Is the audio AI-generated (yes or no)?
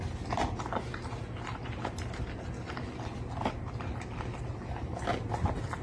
no